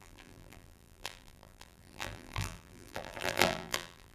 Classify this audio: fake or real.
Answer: fake